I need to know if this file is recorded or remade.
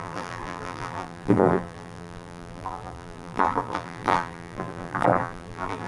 remade